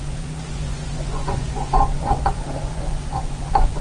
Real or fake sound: fake